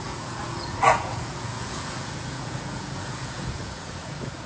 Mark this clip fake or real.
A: fake